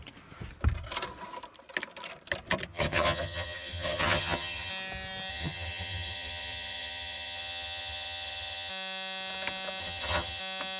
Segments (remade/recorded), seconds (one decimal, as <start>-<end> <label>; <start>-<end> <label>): 0.0-2.7 recorded; 2.7-4.7 remade; 4.7-5.3 recorded; 5.3-8.7 remade; 8.7-9.8 recorded; 9.8-10.4 remade; 10.4-10.8 recorded

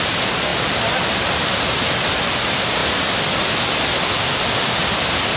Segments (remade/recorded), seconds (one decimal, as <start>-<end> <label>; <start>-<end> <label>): 0.0-5.4 recorded

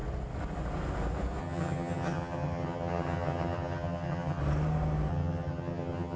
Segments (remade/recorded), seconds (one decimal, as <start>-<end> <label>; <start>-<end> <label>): 0.0-1.4 recorded; 1.4-4.4 remade; 4.4-5.1 recorded; 5.1-6.2 remade

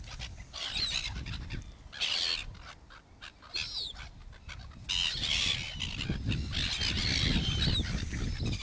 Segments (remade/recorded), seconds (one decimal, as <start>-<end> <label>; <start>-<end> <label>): 0.0-8.6 recorded

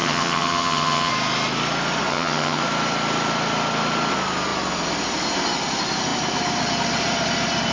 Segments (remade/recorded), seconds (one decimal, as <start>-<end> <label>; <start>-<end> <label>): 0.0-1.1 remade; 1.1-2.1 recorded; 2.1-2.6 remade; 2.6-7.7 recorded

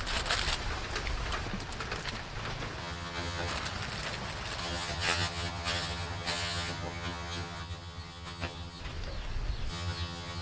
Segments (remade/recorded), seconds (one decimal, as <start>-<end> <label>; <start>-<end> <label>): 0.0-2.8 recorded; 2.8-3.5 remade; 3.5-4.6 recorded; 4.6-8.8 remade; 8.8-9.7 recorded; 9.7-10.4 remade

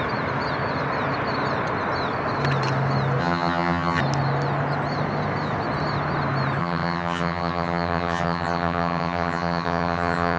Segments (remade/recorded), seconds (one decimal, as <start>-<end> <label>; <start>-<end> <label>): 0.0-3.2 recorded; 3.2-4.0 remade; 4.0-6.6 recorded; 6.6-10.4 remade